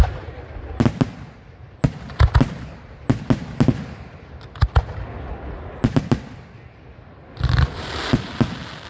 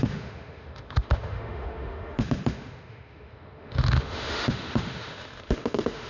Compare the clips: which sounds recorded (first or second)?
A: first